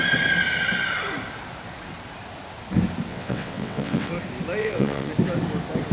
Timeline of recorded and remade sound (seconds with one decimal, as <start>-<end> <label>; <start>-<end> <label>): 0.0-3.1 recorded; 3.1-4.1 remade; 4.1-4.6 recorded; 4.6-5.1 remade; 5.1-5.9 recorded

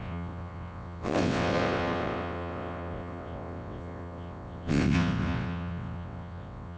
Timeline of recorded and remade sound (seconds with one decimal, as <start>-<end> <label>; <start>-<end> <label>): 0.0-6.8 remade

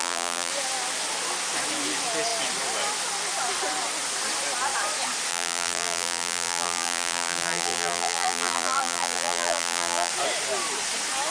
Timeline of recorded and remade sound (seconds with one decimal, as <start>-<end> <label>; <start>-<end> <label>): 0.0-0.5 remade; 0.5-5.3 recorded; 5.3-10.1 remade; 10.1-11.3 recorded